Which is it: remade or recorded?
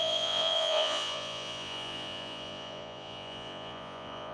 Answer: remade